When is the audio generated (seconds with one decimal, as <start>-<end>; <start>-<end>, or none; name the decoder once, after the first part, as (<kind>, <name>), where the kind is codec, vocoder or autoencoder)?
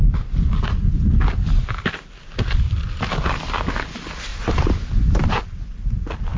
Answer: 4.3-5.4 (vocoder, BigVGAN v2)